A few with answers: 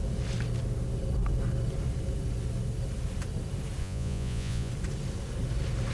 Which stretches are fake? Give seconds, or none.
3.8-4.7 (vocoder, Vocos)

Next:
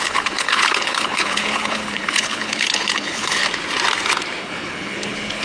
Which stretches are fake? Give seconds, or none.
0.0-3.4 (codec, HILCodec); 4.4-5.4

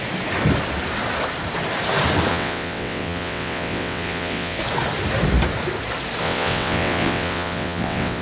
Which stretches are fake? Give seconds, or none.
2.3-4.6 (vocoder, WaveNeXt); 6.2-8.2

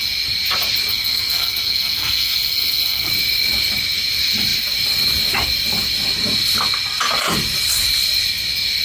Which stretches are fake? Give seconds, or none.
0.9-3.1 (codec, SNAC)